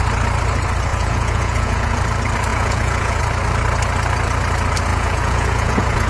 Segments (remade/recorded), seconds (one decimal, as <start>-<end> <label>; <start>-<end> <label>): 0.0-0.9 recorded; 0.9-2.0 remade; 2.0-2.5 recorded; 2.5-3.2 remade; 3.2-4.9 recorded; 4.9-6.1 remade